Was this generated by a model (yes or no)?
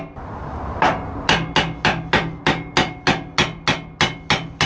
no